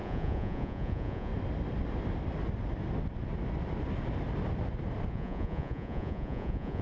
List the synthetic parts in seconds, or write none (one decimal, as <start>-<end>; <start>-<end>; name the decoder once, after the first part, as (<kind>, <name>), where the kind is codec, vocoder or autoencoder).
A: 0.0-1.3 (vocoder, Vocos); 5.1-6.8